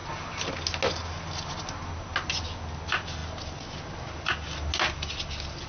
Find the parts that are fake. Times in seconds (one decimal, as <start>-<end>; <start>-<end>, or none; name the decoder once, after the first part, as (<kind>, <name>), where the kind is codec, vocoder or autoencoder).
none